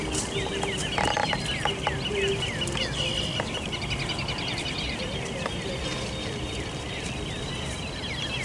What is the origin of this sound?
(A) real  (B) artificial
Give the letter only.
A